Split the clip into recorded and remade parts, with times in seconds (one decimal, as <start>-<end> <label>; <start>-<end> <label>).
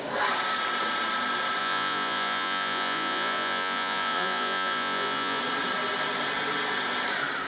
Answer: 0.0-1.6 recorded; 1.6-5.4 remade; 5.4-7.5 recorded